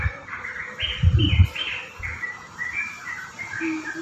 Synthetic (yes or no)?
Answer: yes